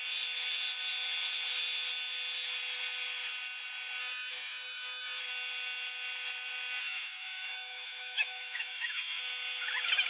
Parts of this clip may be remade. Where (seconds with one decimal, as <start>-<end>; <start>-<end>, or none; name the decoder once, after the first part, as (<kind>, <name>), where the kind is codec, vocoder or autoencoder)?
4.0-5.2 (autoencoder, DAC-VAE); 6.8-9.2